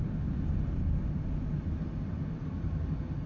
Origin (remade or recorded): recorded